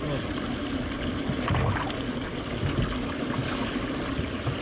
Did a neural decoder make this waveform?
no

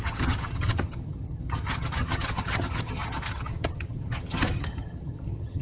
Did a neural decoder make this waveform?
yes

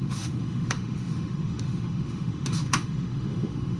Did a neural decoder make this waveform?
yes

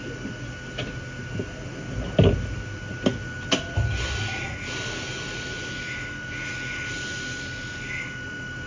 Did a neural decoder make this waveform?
no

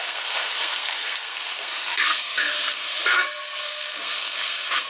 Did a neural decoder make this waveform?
yes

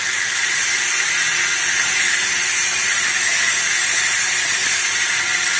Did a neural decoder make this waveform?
yes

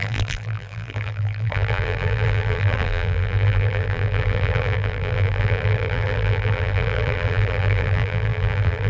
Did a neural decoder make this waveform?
yes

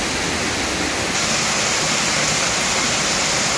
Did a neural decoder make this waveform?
no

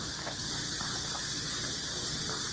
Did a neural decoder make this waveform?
no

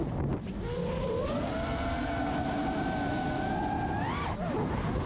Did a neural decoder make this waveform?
no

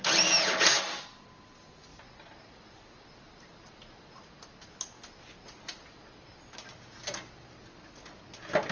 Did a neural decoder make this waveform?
no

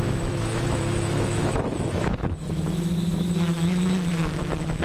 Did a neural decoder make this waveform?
yes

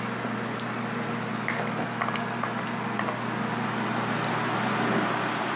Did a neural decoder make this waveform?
no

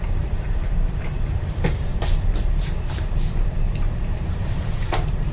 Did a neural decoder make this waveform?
yes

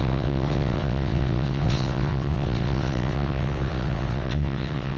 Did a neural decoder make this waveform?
yes